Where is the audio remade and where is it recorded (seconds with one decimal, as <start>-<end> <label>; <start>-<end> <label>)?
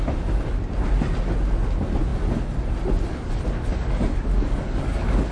0.0-3.1 recorded; 3.1-5.3 remade